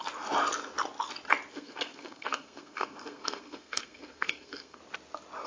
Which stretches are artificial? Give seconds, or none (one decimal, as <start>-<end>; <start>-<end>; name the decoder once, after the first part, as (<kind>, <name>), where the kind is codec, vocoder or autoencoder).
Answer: 1.5-4.8 (codec, SNAC)